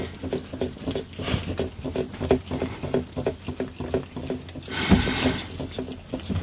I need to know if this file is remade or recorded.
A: recorded